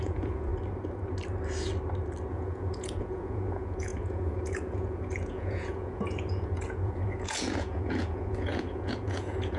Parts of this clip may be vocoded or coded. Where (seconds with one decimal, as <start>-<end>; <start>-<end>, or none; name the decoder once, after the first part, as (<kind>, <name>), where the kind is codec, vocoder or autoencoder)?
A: 0.0-0.5 (vocoder, Vocos); 2.3-9.6